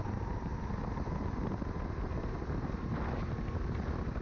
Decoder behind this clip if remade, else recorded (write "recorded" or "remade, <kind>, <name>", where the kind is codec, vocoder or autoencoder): recorded